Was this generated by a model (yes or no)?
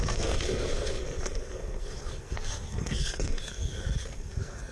yes